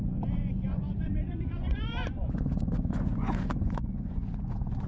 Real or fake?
fake